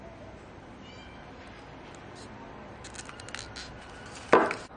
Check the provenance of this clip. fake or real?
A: real